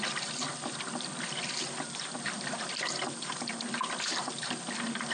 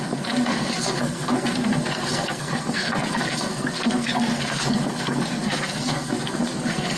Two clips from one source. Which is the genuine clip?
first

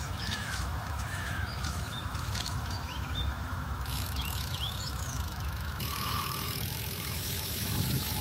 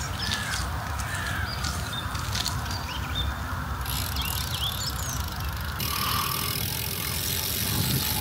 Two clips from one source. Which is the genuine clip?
second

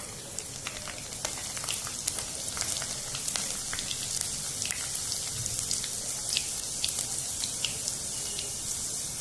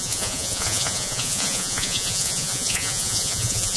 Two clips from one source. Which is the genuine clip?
first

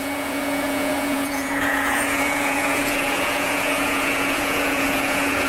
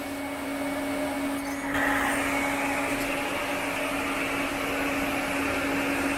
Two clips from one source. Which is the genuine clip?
second